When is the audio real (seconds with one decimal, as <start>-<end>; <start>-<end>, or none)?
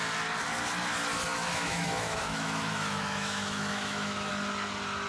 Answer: 0.0-1.3; 4.3-5.1